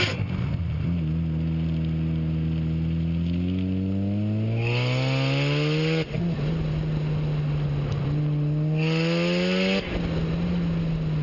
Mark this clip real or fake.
real